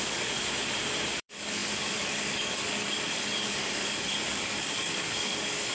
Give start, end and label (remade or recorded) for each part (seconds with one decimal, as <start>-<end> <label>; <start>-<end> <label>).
0.0-0.4 remade; 0.4-1.1 recorded; 1.1-5.7 remade